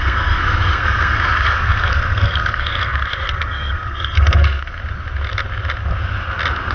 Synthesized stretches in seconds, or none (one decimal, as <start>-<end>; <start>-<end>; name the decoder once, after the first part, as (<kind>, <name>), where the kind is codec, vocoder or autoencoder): 0.0-4.8 (codec, SNAC)